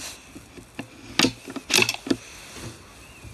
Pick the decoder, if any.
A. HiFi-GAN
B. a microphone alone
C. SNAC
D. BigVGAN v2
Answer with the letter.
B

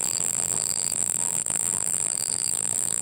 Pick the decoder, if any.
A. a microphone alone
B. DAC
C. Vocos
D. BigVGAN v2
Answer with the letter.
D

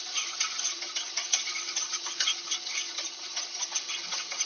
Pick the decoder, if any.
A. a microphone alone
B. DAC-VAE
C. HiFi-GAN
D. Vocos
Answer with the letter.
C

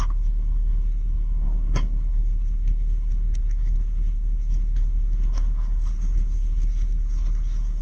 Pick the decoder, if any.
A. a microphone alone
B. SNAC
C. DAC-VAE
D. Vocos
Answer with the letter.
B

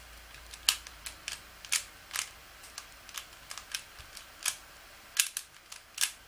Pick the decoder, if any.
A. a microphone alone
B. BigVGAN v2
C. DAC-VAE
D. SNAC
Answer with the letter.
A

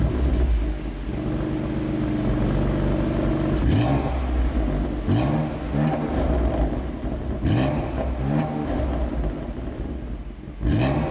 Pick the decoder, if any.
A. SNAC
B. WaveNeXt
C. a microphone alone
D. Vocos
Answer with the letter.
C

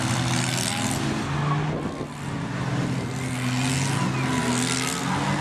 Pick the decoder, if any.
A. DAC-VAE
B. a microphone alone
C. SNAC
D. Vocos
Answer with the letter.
B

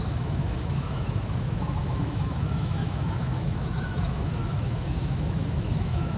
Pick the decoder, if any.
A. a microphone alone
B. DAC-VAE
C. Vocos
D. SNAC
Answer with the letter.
B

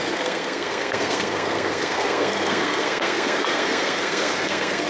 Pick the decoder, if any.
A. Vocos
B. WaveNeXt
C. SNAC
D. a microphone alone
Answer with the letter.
C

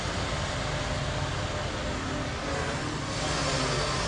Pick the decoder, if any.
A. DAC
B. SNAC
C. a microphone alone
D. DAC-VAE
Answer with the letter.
C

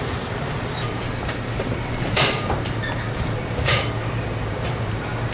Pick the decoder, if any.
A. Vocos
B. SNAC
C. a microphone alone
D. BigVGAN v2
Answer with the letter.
D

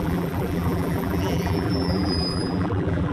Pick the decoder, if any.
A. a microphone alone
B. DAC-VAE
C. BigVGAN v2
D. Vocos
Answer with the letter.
C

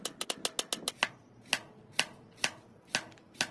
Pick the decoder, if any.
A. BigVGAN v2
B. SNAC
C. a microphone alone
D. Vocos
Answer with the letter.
C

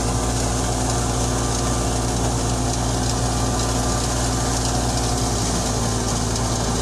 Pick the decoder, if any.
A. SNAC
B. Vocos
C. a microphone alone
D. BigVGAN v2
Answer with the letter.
C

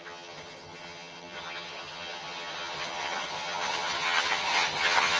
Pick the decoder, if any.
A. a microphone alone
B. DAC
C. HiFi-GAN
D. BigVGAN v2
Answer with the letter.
C